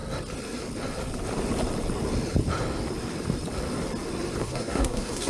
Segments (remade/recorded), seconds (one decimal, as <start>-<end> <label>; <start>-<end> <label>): 0.0-4.4 recorded; 4.4-5.3 remade